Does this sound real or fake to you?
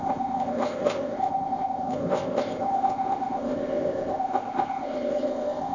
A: fake